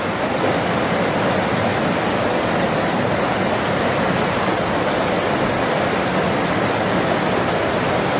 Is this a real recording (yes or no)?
yes